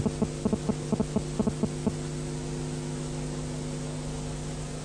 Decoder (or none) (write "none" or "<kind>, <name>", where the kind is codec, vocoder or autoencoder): none